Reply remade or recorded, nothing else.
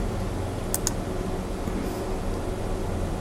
recorded